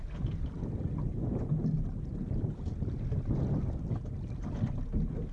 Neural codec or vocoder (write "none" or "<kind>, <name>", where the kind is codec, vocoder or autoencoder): none